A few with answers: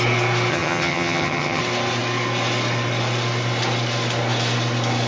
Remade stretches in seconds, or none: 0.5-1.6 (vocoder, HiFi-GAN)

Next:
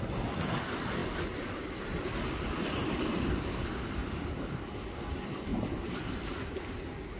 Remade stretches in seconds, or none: 2.8-3.3 (vocoder, BigVGAN v2); 4.0-4.7; 5.5-6.6

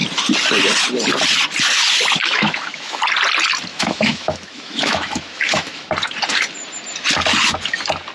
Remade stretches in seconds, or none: 2.2-3.0 (autoencoder, DAC-VAE); 3.7-5.9

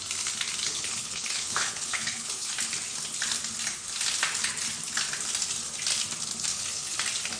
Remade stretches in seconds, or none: 0.7-2.5 (codec, HILCodec); 6.5-7.0

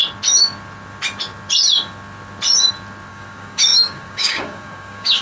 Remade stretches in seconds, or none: 3.1-5.2 (codec, DAC)

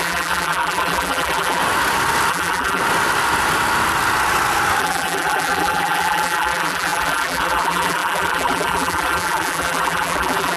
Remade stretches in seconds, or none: 0.0-1.6 (vocoder, BigVGAN v2); 2.3-2.8; 4.8-10.6